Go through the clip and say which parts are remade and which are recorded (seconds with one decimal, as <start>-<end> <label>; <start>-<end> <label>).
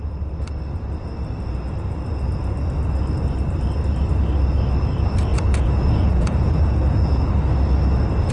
0.0-5.3 recorded; 5.3-7.3 remade; 7.3-8.3 recorded